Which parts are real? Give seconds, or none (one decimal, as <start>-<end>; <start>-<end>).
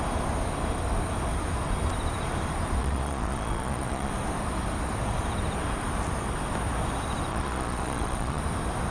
0.0-2.8; 4.1-7.3; 8.4-8.9